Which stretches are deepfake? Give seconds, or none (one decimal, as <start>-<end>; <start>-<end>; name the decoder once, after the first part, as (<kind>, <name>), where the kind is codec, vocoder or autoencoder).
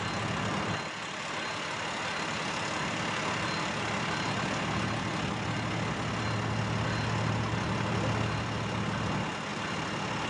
none